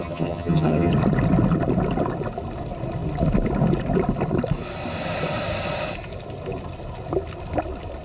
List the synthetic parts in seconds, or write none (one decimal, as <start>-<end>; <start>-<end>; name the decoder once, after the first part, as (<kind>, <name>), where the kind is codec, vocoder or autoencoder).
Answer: 0.0-0.9 (vocoder, HiFi-GAN)